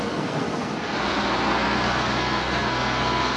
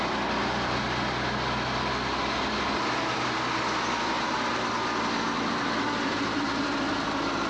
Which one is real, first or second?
second